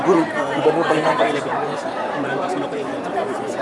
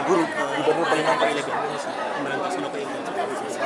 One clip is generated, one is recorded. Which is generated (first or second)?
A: first